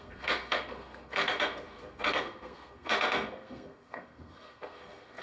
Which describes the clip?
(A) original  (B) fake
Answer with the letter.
B